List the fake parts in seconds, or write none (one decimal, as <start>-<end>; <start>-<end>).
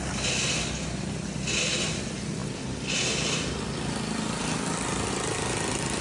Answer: none